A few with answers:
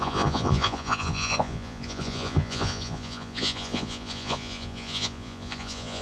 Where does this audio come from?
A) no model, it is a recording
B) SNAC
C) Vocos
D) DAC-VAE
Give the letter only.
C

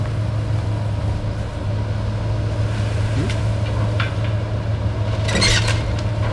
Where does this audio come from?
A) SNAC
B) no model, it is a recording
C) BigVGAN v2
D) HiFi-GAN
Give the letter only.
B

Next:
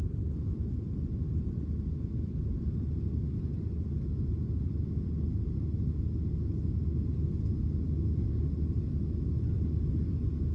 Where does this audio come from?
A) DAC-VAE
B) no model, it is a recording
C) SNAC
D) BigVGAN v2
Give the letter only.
B